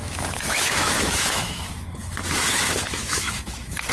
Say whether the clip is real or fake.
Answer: fake